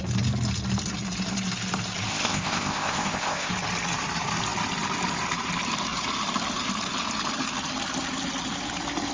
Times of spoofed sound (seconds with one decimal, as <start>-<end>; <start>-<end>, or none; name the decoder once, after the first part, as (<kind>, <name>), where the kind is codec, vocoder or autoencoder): 2.1-3.5 (codec, ZipCodec)